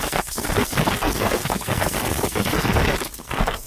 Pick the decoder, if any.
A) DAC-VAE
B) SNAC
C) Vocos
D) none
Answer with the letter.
B